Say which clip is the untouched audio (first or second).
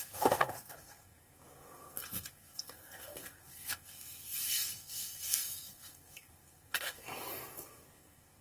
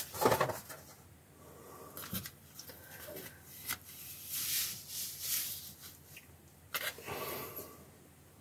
second